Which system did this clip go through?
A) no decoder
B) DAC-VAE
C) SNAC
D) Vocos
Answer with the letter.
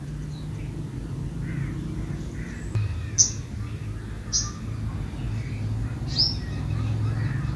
A